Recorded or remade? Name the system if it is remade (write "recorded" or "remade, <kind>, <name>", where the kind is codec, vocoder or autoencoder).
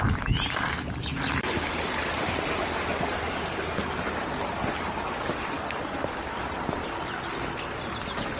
recorded